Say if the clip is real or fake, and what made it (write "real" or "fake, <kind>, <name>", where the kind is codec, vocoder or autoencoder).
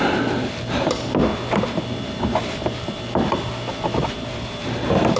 real